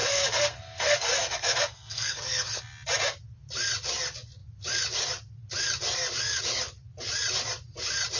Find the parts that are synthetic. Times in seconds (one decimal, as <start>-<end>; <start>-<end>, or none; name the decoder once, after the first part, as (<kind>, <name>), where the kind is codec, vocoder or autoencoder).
0.0-2.6 (codec, SNAC)